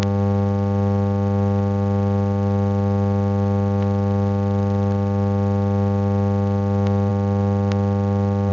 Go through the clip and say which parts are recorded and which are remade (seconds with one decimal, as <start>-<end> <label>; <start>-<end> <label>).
0.0-8.5 recorded